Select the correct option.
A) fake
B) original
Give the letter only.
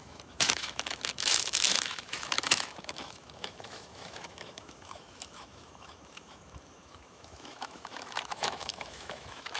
A